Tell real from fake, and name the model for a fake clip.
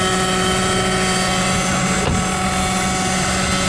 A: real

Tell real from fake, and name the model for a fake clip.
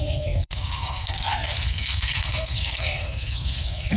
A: fake, codec, SNAC